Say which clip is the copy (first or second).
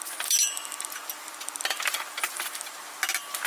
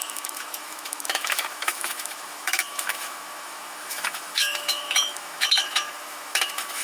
second